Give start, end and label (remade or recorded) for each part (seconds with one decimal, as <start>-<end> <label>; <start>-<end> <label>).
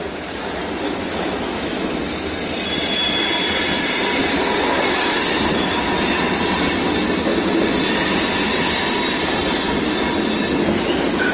0.0-11.3 recorded